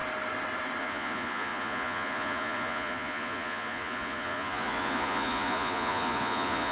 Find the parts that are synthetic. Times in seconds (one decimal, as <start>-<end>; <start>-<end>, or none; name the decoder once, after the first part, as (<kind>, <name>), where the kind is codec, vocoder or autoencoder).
0.8-6.7 (vocoder, Vocos)